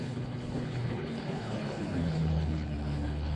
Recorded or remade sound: remade